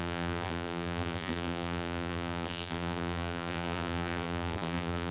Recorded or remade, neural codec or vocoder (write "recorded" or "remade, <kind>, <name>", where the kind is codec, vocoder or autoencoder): remade, vocoder, BigVGAN v2